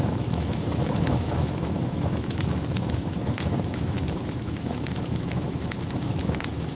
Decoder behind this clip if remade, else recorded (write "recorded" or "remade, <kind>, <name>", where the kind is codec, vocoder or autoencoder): remade, autoencoder, DAC-VAE